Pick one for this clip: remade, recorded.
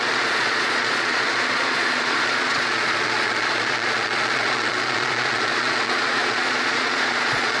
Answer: remade